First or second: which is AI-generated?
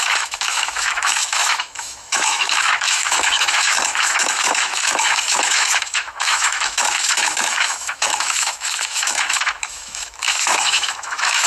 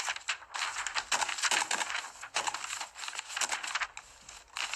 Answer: first